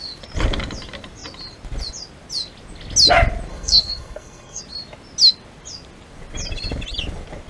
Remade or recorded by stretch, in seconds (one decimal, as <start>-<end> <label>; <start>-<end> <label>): 0.0-3.5 recorded; 3.5-4.6 remade; 4.6-7.5 recorded